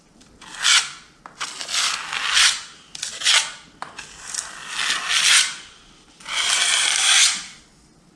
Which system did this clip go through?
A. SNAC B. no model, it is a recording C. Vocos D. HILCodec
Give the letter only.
B